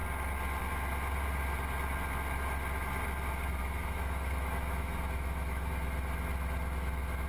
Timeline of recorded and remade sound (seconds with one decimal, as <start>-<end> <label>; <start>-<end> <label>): 0.0-3.6 recorded; 3.6-5.7 remade; 5.7-7.3 recorded

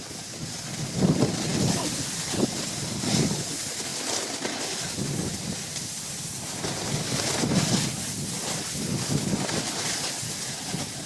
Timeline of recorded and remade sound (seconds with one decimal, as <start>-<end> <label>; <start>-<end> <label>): 0.0-11.1 recorded